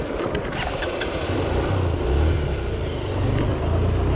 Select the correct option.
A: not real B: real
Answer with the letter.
B